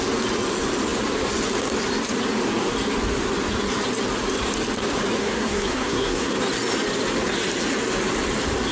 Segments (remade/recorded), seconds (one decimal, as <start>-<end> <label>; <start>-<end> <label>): 0.0-5.2 recorded; 5.2-6.3 remade; 6.3-8.7 recorded